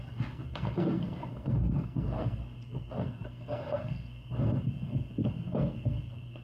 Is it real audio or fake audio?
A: fake